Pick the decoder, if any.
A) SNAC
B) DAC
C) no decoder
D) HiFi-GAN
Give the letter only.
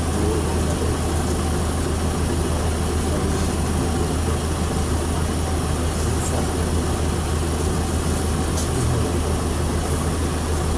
C